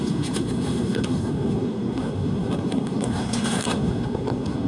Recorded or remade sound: remade